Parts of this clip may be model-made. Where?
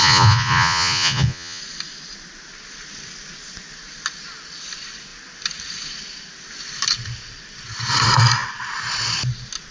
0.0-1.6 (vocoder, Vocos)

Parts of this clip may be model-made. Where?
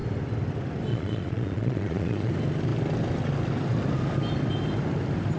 0.9-2.3 (vocoder, Vocos)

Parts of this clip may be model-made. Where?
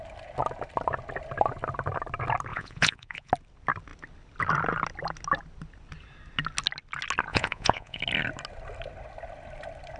2.5-3.3 (vocoder, Vocos); 7.3-8.0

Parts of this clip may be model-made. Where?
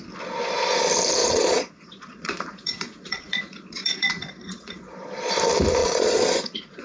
1.2-5.3 (vocoder, Vocos); 5.8-6.8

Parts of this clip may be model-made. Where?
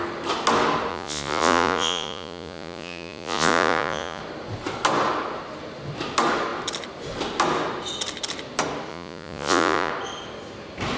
0.9-4.2 (vocoder, Vocos); 8.9-9.9